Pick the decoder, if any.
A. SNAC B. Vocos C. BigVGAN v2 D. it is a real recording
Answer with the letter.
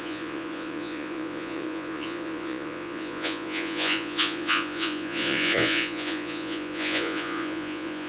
B